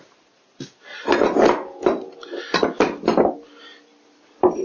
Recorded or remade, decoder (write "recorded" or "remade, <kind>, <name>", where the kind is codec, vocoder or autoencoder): recorded